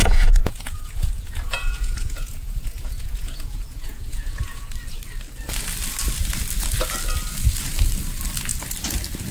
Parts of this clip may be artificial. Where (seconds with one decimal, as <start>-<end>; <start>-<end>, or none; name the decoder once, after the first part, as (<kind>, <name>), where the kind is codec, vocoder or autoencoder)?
0.0-4.7 (vocoder, Vocos)